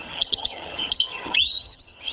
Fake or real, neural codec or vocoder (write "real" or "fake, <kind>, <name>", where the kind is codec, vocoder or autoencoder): fake, vocoder, HiFi-GAN